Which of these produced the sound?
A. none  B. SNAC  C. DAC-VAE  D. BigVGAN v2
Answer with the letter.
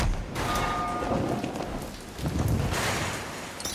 A